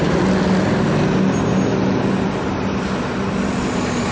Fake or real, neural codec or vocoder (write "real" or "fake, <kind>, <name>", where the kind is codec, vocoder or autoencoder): real